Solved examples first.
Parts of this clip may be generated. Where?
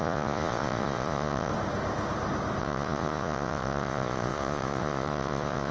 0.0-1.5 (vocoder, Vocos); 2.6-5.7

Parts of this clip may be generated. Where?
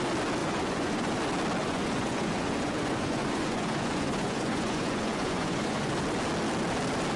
0.4-1.1 (vocoder, Vocos); 1.6-5.9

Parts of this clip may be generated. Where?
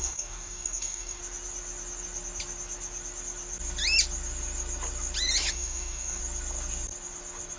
0.0-1.2 (codec, DAC); 5.5-6.2